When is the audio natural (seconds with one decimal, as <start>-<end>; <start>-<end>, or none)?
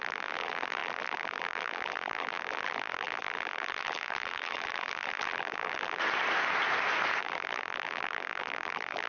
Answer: 6.0-7.2